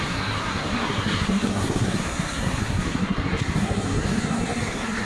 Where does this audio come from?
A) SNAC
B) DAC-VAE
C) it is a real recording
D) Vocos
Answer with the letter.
A